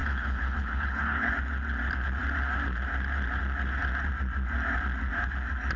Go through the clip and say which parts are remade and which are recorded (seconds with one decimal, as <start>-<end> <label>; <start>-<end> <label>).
0.0-1.3 remade; 1.3-5.8 recorded